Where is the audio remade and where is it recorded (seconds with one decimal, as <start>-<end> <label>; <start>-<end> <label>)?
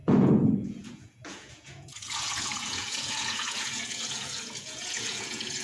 0.0-5.6 remade